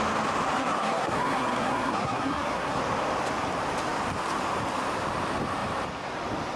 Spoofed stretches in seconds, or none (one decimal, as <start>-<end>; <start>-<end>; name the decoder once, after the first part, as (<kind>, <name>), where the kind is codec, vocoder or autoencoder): 0.6-2.8 (codec, SNAC)